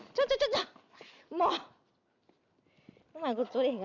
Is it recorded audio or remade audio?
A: recorded